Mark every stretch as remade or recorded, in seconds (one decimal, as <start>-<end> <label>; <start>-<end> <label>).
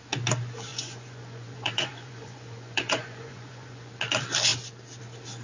0.0-0.7 recorded; 0.7-3.9 remade; 3.9-5.4 recorded